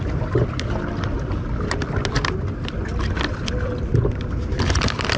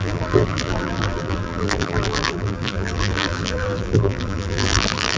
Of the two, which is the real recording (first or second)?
first